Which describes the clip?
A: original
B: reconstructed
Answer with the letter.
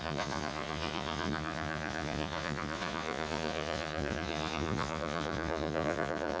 B